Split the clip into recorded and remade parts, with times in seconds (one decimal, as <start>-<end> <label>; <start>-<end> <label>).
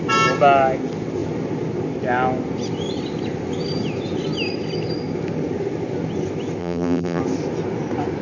0.0-6.6 recorded; 6.6-7.2 remade; 7.2-8.2 recorded